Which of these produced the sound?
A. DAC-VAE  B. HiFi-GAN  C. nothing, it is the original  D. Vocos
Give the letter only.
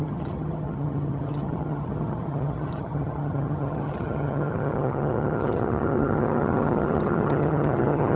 B